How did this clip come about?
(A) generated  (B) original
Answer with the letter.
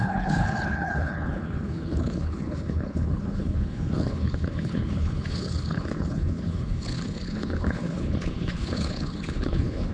A